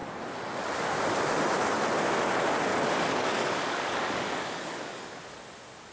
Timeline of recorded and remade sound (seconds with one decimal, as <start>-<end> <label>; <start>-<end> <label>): 0.0-2.7 recorded; 2.7-5.2 remade; 5.2-5.9 recorded

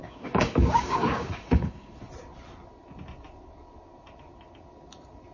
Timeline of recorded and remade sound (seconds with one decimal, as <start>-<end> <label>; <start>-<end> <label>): 0.0-1.9 remade; 1.9-5.3 recorded

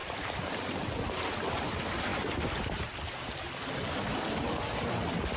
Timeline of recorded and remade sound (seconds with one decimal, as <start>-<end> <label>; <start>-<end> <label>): 0.0-0.8 remade; 0.8-5.4 recorded

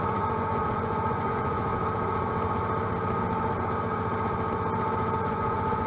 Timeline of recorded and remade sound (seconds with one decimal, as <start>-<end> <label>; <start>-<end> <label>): 0.0-1.7 remade; 1.7-5.2 recorded; 5.2-5.9 remade